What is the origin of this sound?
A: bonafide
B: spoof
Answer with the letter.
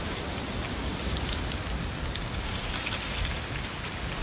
A